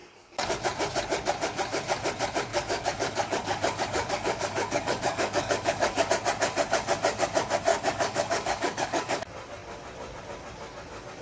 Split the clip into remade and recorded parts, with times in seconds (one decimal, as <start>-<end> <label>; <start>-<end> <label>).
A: 0.0-0.5 remade; 0.5-2.5 recorded; 2.5-6.1 remade; 6.1-7.7 recorded; 7.7-9.2 remade; 9.2-11.2 recorded